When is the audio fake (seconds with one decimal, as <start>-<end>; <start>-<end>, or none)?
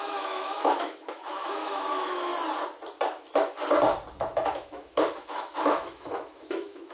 0.0-2.3; 4.1-6.9